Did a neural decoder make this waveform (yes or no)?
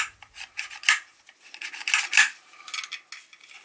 no